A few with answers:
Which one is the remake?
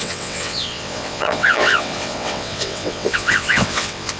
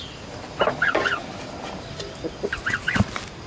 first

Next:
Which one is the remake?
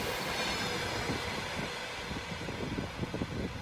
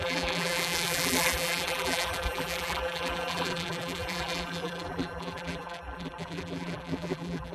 second